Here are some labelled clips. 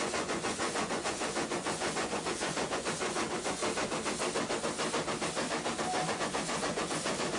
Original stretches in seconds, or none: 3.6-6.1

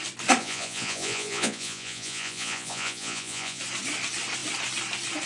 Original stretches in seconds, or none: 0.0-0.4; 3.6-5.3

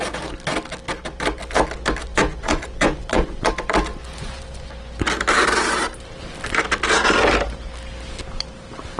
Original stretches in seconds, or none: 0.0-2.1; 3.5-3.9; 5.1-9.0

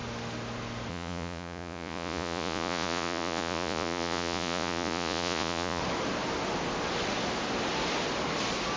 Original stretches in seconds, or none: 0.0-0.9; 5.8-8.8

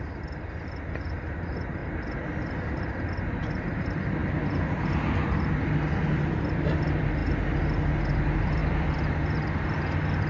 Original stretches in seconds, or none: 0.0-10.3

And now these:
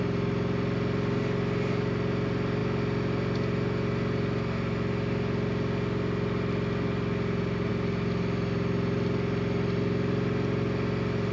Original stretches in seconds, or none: 0.0-11.3

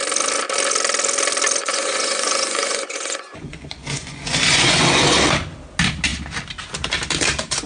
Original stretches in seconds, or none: 0.0-1.6; 5.2-7.7

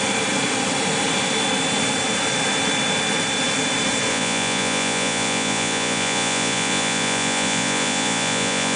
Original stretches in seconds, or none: 0.0-4.1